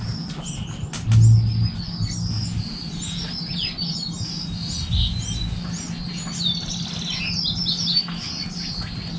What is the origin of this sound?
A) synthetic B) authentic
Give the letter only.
B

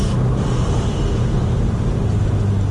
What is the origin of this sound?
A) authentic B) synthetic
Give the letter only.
A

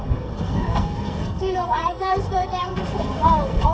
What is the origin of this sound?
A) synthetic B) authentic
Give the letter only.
A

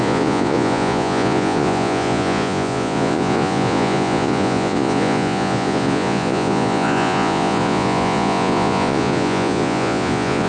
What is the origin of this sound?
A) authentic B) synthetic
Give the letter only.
B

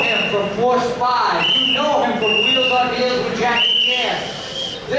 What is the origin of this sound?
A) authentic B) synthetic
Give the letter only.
A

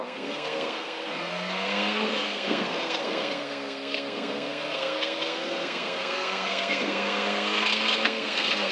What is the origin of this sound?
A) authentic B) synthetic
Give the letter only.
B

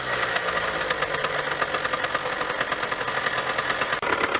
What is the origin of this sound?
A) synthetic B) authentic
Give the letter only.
B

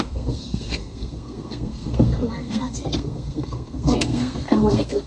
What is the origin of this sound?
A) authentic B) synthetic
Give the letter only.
B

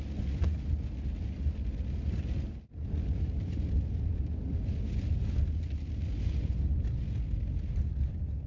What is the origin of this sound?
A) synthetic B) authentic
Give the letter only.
B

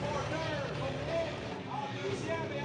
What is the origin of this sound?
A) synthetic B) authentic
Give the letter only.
A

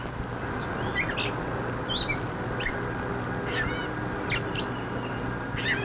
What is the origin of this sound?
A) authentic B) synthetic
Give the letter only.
A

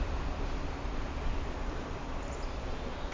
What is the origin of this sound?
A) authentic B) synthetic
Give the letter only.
B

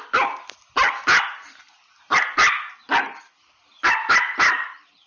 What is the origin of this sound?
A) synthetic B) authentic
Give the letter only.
B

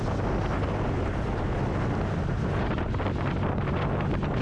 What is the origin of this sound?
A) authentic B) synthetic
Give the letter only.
A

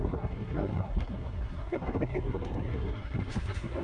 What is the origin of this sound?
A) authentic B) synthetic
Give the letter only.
B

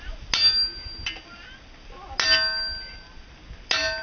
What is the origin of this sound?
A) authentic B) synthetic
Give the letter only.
A